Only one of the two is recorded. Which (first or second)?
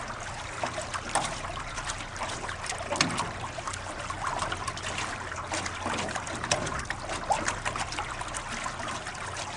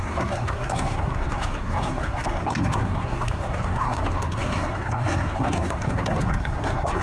first